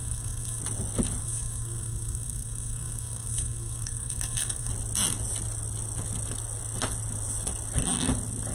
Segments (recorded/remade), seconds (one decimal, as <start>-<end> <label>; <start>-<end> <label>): 0.0-0.6 remade; 0.6-1.2 recorded; 1.2-4.7 remade; 4.7-8.5 recorded